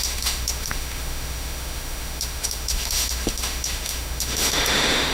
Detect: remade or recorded remade